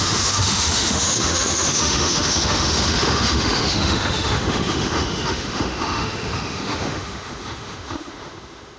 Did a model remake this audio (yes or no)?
yes